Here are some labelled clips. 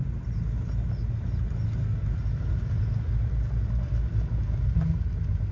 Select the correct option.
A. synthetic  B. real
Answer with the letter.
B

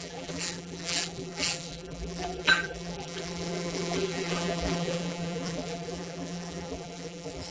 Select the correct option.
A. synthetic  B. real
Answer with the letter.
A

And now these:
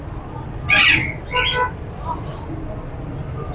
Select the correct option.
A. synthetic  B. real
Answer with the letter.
B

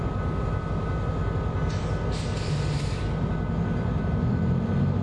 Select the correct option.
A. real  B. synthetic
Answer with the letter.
A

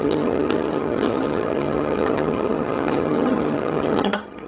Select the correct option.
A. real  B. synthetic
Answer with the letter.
B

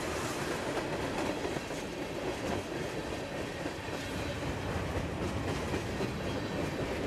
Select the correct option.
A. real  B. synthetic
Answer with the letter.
A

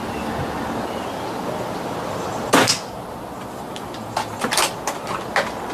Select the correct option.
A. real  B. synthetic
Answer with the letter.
A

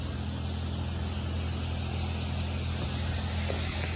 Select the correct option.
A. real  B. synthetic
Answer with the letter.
A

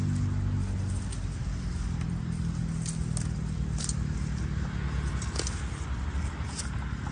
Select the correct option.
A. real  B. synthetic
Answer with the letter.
A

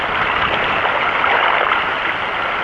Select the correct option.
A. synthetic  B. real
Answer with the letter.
B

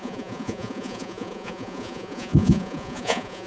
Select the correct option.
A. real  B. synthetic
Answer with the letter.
B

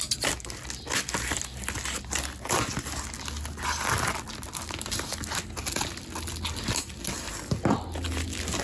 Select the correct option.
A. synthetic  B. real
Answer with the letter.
B